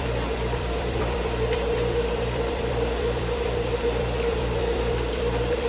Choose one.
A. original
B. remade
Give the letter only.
B